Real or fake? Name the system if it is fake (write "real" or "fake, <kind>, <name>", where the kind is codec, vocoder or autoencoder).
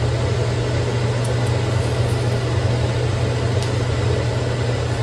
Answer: real